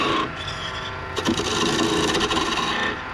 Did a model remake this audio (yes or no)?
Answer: no